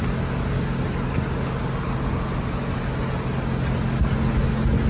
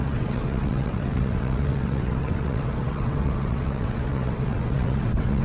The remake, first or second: second